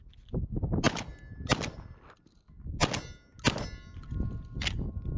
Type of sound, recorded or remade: recorded